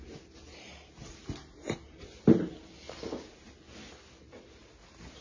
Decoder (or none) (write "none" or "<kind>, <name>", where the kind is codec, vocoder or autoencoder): none